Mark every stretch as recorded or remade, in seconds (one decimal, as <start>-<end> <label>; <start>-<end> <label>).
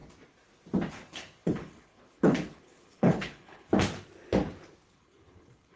0.0-0.9 recorded; 0.9-3.7 remade; 3.7-4.9 recorded; 4.9-5.8 remade